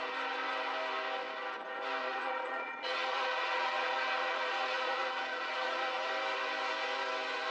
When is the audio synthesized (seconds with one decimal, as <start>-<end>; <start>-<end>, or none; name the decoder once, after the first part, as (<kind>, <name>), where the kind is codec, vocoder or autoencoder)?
2.0-6.1 (vocoder, Vocos)